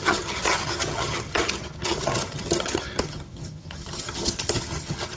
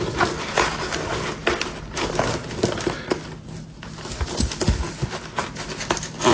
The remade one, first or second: first